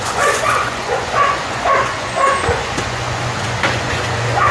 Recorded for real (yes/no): no